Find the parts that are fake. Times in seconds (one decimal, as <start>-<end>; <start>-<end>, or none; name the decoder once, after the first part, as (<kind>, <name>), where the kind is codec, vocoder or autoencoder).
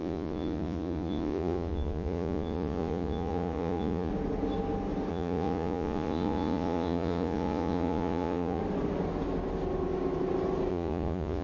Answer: 0.0-4.1 (vocoder, Vocos); 5.1-8.6; 10.7-11.4